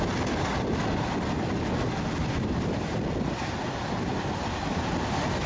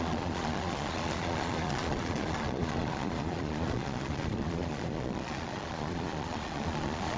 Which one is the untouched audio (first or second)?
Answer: first